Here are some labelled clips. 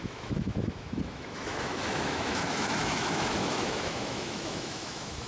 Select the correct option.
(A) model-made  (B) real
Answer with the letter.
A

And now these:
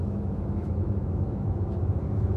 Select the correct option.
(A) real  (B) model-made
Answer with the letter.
B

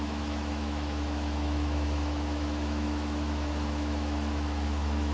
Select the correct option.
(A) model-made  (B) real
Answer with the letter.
A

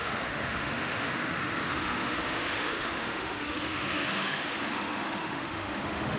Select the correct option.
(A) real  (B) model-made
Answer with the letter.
B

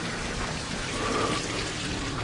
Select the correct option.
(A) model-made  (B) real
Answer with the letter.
B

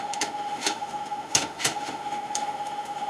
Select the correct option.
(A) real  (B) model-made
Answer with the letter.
B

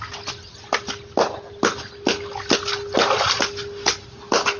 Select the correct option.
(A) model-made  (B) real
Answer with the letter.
B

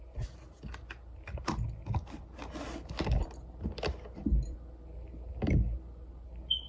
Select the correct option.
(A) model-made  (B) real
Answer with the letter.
B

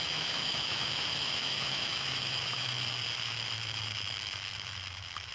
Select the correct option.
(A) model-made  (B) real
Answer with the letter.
A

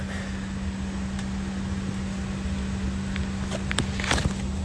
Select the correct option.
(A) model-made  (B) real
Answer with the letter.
B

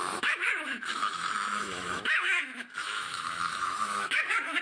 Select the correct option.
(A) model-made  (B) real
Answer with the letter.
A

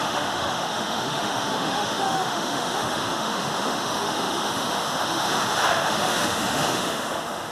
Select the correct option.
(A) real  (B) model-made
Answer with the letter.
B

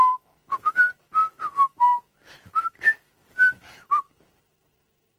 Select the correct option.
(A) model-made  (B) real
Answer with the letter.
A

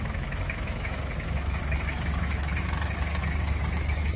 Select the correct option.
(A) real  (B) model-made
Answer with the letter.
B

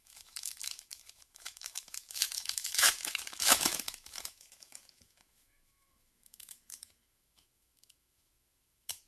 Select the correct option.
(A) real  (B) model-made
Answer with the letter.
B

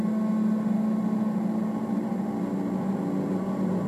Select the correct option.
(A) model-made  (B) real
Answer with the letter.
B